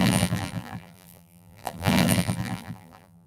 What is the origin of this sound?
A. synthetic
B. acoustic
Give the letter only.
A